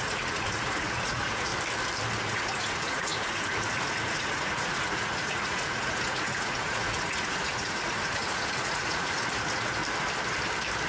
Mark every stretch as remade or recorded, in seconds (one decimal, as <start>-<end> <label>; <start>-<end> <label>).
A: 0.0-1.5 remade; 1.5-2.2 recorded; 2.2-9.8 remade; 9.8-10.9 recorded

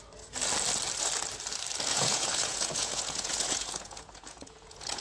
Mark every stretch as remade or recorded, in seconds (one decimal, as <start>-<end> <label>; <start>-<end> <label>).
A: 0.0-1.9 recorded; 1.9-5.0 remade

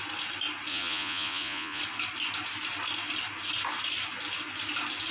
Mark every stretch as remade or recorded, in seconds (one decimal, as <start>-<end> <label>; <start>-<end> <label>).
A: 0.0-0.7 recorded; 0.7-1.8 remade; 1.8-5.1 recorded

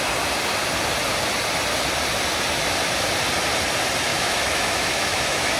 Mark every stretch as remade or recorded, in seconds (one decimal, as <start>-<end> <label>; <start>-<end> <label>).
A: 0.0-4.1 recorded; 4.1-5.6 remade

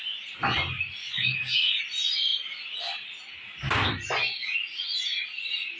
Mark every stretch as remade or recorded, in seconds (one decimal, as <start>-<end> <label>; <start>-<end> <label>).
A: 0.0-1.0 recorded; 1.0-1.8 remade; 1.8-5.8 recorded